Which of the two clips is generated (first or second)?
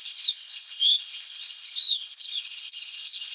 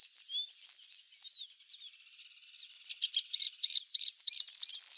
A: first